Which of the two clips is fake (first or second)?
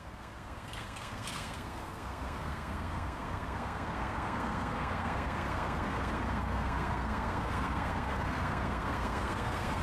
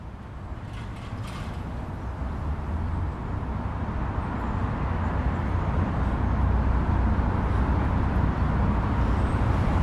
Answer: first